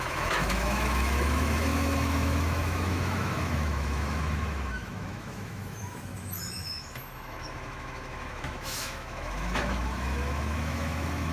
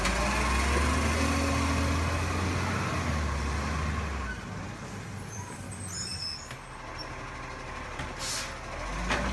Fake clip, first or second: first